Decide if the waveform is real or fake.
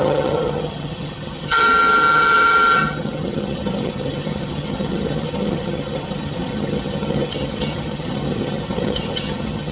fake